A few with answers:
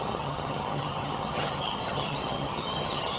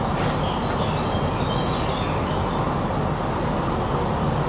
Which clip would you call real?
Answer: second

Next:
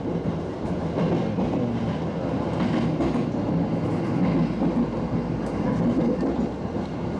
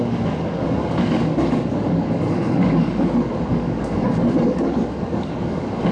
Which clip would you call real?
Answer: first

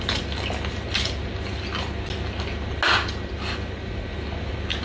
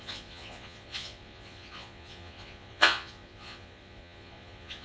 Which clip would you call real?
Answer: first